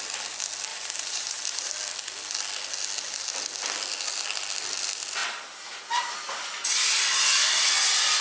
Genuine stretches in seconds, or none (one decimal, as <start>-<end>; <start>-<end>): 0.0-0.7; 1.7-8.2